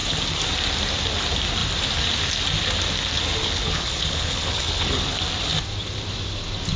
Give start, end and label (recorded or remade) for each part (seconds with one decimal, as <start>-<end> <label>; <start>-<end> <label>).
0.0-3.4 recorded; 3.4-5.0 remade; 5.0-6.8 recorded